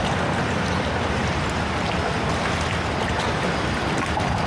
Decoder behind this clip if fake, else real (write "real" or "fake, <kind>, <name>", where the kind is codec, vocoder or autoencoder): real